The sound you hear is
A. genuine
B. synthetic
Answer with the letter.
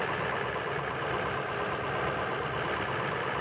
B